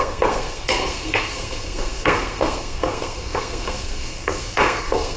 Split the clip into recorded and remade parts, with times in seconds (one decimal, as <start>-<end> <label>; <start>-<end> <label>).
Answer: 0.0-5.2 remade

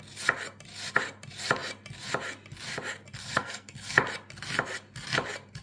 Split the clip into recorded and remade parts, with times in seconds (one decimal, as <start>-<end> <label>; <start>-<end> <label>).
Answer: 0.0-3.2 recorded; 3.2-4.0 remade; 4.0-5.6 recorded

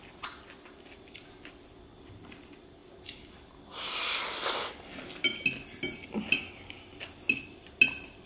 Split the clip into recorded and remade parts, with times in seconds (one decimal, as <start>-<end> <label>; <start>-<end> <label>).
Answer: 0.0-8.3 recorded